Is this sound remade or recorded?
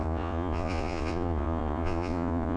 remade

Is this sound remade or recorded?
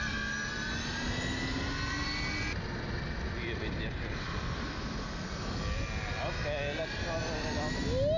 recorded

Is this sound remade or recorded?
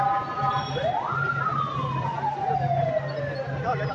recorded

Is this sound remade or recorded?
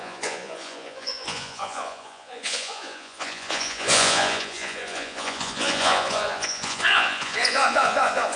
remade